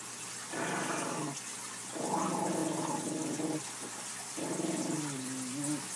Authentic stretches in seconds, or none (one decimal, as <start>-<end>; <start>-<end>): 0.0-6.0